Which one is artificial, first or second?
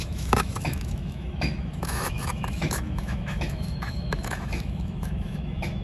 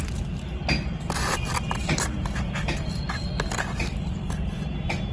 first